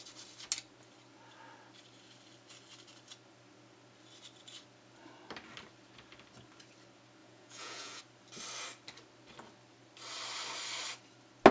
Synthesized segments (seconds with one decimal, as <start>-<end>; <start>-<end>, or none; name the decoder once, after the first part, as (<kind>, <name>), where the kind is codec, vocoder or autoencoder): 7.2-8.0 (vocoder, Vocos)